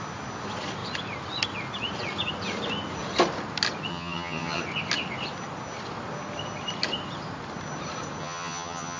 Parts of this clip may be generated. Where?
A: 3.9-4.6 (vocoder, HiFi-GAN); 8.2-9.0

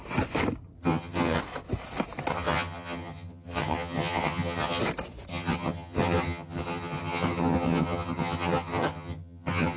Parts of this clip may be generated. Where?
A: 0.8-1.4 (vocoder, HiFi-GAN); 2.3-4.8; 5.3-9.8

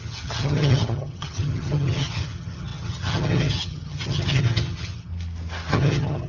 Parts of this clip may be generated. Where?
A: 0.0-5.1 (vocoder, HiFi-GAN); 5.7-6.3

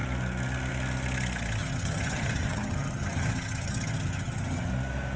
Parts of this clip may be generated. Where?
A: 1.6-4.7 (vocoder, HiFi-GAN)

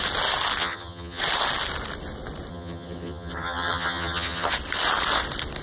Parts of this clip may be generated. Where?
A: 0.6-1.2 (vocoder, HiFi-GAN); 2.5-4.5

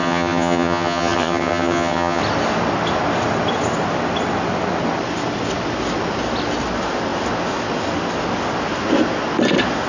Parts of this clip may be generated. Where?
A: 0.0-2.2 (vocoder, HiFi-GAN)

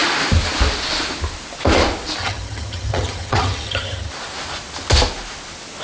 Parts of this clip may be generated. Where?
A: 2.2-4.1 (vocoder, HiFi-GAN)

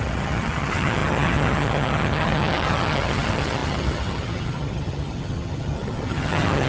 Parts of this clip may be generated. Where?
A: 0.0-6.7 (vocoder, HiFi-GAN)